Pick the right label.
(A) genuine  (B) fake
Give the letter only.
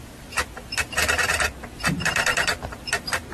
B